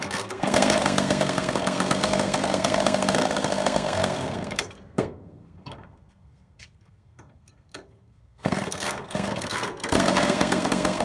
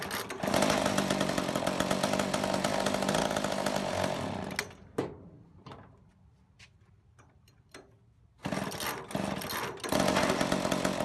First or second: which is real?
second